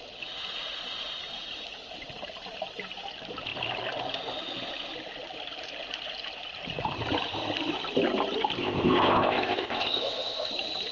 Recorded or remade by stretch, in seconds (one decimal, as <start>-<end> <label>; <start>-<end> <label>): 0.0-8.6 recorded; 8.6-10.5 remade; 10.5-10.9 recorded